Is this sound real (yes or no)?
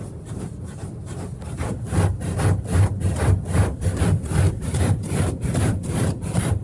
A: no